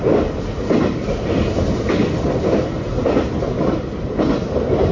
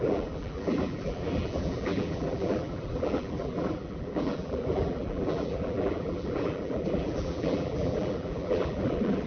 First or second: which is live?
first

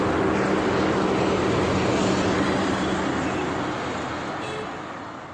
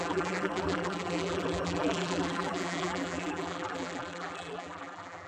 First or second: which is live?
first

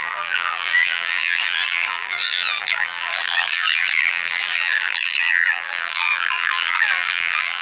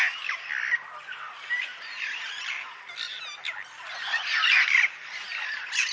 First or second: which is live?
second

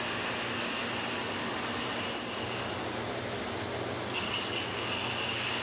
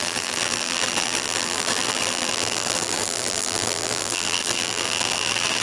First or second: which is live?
first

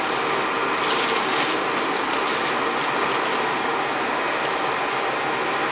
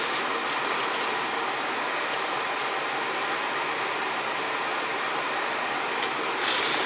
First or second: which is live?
first